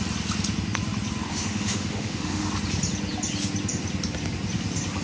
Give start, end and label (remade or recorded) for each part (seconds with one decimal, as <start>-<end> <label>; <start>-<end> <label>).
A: 0.0-1.3 recorded; 1.3-2.5 remade; 2.5-5.0 recorded